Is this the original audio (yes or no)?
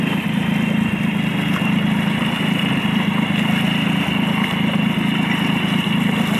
yes